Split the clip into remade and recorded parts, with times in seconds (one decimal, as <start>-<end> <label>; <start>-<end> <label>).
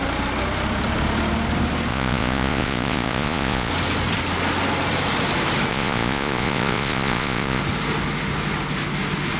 0.0-1.9 recorded; 1.9-3.7 remade; 3.7-5.7 recorded; 5.7-7.6 remade; 7.6-9.4 recorded